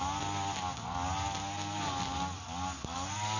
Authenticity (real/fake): real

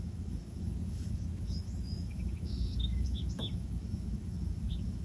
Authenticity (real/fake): fake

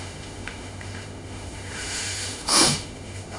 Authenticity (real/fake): fake